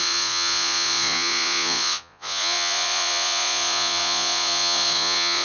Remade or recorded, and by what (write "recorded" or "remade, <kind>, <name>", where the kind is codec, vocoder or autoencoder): remade, vocoder, Vocos